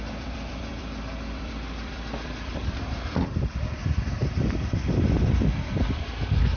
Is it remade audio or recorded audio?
remade